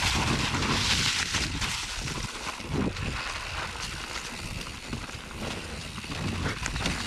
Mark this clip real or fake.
real